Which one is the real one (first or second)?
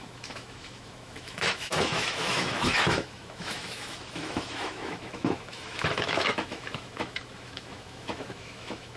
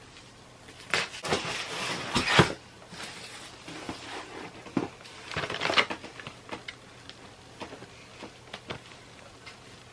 second